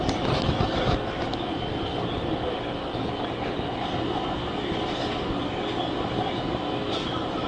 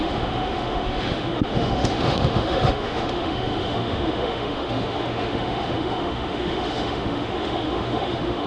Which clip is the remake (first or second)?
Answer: second